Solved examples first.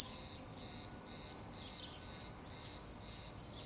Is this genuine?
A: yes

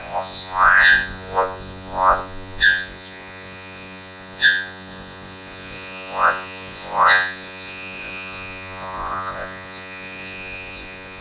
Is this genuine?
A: no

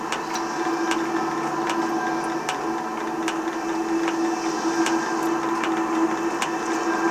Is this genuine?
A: yes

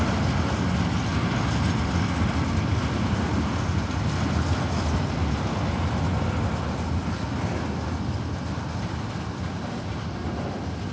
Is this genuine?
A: yes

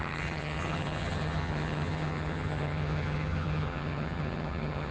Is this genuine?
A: no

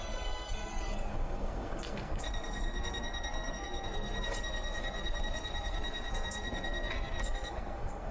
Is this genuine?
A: no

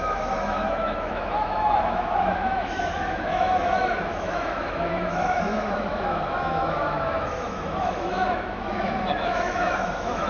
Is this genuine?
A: no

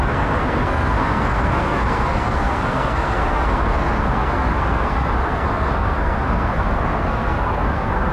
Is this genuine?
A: no